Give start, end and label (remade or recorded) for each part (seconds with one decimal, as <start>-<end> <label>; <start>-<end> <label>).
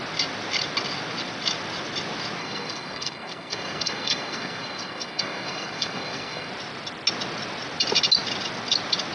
0.0-2.4 recorded; 2.4-6.5 remade; 6.5-9.1 recorded